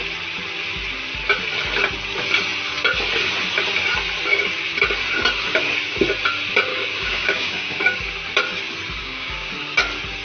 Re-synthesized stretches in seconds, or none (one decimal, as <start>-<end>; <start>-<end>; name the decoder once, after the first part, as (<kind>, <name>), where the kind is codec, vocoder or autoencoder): 6.7-8.0 (codec, DAC); 9.0-9.5